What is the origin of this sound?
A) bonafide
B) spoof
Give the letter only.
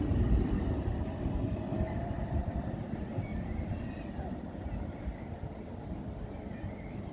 B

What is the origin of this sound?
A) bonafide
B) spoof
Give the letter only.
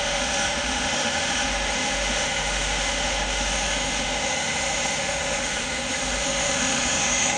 B